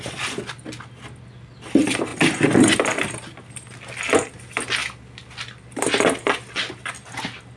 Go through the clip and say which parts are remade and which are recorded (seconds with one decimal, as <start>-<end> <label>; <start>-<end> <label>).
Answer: 0.0-2.1 recorded; 2.1-3.1 remade; 3.1-4.8 recorded; 4.8-5.6 remade; 5.6-7.6 recorded